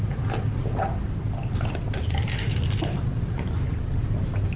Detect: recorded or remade recorded